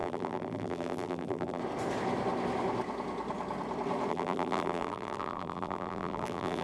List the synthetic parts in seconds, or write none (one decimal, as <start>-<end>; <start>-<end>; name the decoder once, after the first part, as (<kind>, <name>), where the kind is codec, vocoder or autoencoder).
0.0-1.6 (vocoder, BigVGAN v2); 4.1-6.6